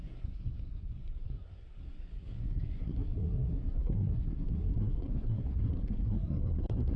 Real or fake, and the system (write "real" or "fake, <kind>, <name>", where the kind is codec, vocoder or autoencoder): fake, codec, SNAC